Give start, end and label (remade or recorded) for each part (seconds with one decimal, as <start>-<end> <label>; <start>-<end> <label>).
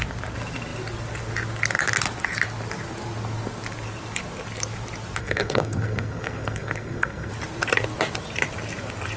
0.0-5.2 recorded; 5.2-7.3 remade; 7.3-9.2 recorded